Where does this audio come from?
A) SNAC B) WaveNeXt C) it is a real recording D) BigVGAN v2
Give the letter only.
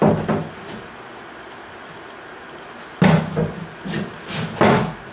C